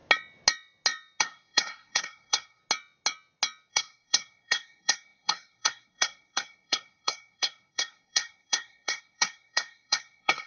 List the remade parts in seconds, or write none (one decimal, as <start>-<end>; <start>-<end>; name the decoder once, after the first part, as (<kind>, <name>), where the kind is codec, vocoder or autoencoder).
1.2-2.6 (codec, SNAC); 3.7-10.5